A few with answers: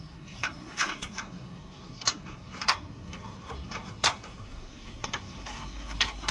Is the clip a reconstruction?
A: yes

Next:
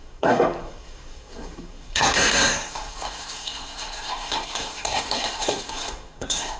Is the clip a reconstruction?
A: yes